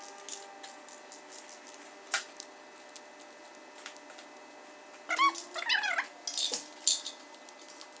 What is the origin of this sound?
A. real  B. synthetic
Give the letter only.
A